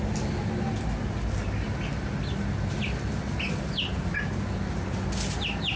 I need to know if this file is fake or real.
real